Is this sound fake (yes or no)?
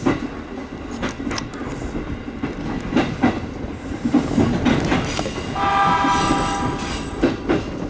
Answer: no